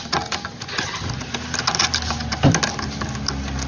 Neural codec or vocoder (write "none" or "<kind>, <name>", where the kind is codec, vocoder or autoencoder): none